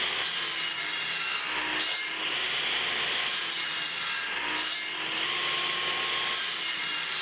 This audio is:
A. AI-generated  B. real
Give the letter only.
B